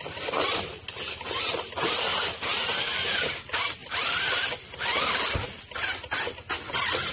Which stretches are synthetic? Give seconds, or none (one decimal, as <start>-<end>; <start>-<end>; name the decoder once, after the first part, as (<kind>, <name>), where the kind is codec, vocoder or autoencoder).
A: 2.1-3.3 (vocoder, BigVGAN v2); 3.8-5.2